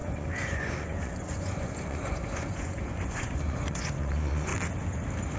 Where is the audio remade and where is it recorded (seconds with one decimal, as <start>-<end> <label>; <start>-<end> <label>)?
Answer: 0.0-4.5 remade; 4.5-5.4 recorded

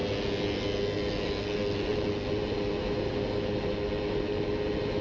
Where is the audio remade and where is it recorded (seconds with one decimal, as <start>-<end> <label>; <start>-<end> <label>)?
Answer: 0.0-5.0 recorded